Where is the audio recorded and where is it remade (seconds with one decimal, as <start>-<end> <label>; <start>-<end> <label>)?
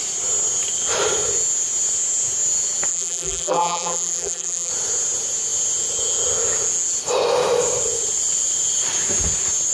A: 0.0-2.9 recorded; 2.9-4.7 remade; 4.7-9.7 recorded